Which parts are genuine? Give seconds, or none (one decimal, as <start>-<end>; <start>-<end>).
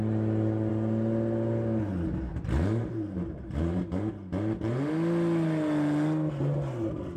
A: 0.0-2.3; 4.9-7.2